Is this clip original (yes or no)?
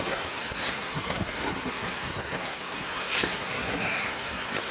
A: no